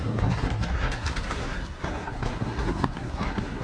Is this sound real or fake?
fake